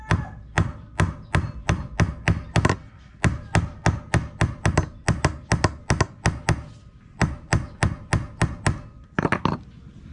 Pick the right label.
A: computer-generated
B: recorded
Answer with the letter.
B